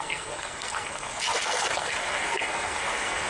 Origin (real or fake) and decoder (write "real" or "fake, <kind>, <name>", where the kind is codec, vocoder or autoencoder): fake, codec, SNAC